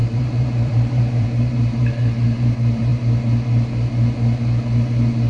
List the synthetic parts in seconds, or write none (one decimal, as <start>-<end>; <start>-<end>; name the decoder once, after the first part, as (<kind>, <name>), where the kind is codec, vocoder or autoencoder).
0.0-2.9 (vocoder, BigVGAN v2)